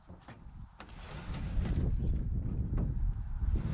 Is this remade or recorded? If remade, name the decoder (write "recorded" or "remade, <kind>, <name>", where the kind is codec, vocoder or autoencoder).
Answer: recorded